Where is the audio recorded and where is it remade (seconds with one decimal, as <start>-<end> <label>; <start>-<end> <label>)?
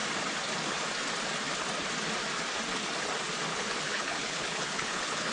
0.0-3.5 recorded; 3.5-5.3 remade